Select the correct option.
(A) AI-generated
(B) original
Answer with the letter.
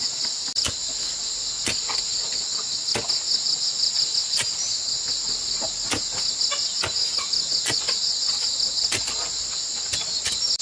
B